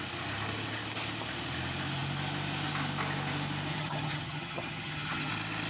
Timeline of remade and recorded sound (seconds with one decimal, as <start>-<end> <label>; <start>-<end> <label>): 0.0-3.7 recorded; 3.7-5.3 remade; 5.3-5.7 recorded